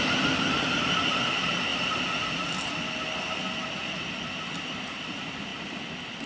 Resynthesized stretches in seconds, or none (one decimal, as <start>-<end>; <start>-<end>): none